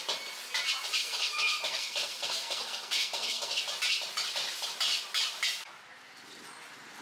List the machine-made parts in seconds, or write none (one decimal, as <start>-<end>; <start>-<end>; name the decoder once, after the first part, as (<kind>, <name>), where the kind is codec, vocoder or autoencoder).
1.0-3.6 (codec, SNAC)

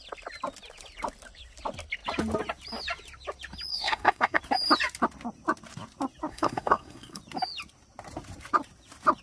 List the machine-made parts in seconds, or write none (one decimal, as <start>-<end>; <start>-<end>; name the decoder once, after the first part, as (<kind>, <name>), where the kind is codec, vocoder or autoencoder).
3.7-4.4 (codec, SNAC); 6.3-7.2

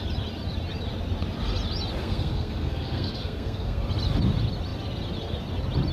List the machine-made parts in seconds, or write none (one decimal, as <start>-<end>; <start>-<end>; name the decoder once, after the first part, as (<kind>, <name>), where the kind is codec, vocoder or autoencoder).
2.0-3.8 (codec, SNAC)

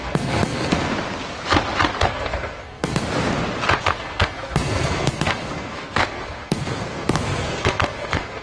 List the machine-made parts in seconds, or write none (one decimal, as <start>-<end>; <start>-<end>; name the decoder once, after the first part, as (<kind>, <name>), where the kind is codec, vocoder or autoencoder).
0.0-0.9 (codec, SNAC); 2.0-3.0; 3.8-8.4

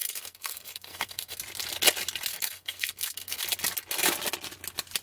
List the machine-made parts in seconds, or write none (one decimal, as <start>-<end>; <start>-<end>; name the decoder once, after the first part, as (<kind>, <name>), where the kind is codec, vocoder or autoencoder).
0.0-1.4 (codec, SNAC); 2.3-3.4

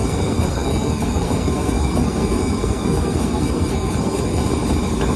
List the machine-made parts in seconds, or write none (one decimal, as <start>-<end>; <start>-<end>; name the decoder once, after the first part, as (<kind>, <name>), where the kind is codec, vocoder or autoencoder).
0.0-4.4 (codec, SNAC)

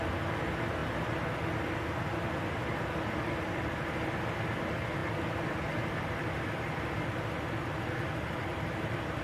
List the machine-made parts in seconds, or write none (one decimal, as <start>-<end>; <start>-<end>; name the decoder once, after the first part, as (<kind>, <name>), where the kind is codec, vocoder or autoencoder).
none

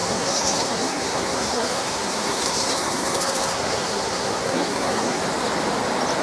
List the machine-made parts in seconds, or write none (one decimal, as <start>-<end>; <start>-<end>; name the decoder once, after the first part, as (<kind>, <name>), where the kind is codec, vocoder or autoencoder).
0.0-5.2 (codec, SNAC)